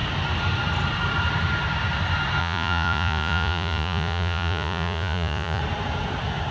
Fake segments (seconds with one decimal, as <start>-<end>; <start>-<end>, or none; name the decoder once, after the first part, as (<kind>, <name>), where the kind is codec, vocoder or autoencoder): 2.4-5.6 (vocoder, Vocos)